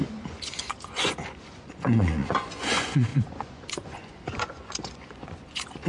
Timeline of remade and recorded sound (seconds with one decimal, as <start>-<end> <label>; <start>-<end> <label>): 0.0-5.9 remade